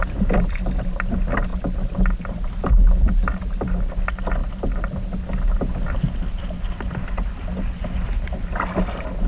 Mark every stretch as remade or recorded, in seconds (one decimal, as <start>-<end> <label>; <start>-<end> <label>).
0.0-9.3 recorded